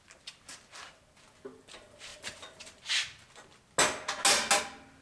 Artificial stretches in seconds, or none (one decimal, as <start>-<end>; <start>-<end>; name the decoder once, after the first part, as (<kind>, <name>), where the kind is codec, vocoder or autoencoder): none